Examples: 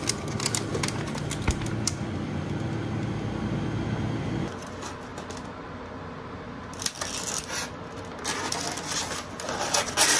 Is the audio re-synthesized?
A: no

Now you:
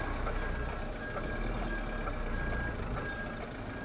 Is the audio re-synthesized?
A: no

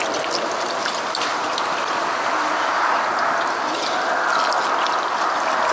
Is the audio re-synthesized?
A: no